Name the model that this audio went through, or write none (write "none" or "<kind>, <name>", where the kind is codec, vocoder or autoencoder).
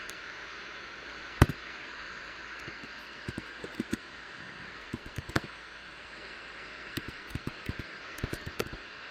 codec, SNAC